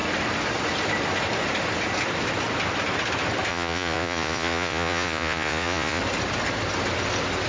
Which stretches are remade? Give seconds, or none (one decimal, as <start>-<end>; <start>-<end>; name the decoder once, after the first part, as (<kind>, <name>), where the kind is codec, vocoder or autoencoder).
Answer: 3.5-6.0 (vocoder, Vocos)